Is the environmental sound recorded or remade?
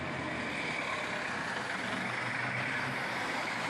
recorded